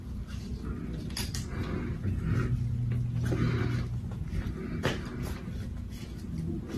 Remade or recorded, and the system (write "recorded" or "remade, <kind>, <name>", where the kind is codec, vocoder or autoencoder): recorded